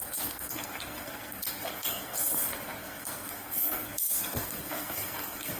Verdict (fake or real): fake